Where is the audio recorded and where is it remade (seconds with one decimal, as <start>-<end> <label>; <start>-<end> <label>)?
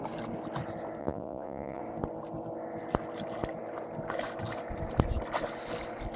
0.0-1.0 recorded; 1.0-1.8 remade; 1.8-6.2 recorded